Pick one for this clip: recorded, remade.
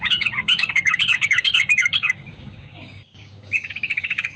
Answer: remade